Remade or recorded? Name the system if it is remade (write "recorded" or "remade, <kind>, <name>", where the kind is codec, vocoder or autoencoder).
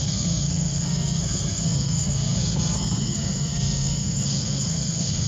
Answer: remade, codec, SNAC